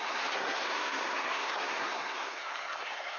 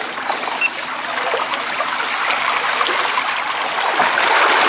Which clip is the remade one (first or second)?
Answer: first